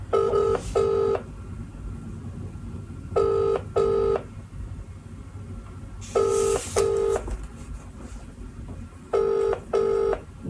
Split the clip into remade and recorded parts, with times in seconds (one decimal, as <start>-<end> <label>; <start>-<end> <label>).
0.0-10.5 recorded